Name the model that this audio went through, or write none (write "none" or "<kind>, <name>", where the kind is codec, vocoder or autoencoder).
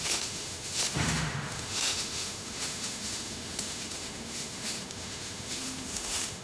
autoencoder, DAC-VAE